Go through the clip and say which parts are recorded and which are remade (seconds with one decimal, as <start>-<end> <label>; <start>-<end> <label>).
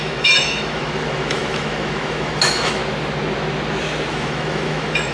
0.0-2.8 remade; 2.8-4.1 recorded; 4.1-5.1 remade